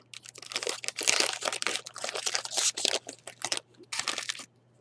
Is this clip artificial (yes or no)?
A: no